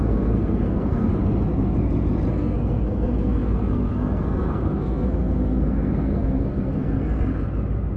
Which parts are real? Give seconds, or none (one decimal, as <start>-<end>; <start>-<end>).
1.1-2.3; 7.3-8.0